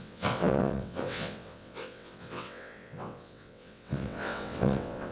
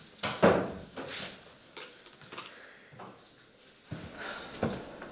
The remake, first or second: first